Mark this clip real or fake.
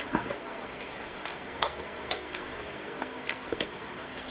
fake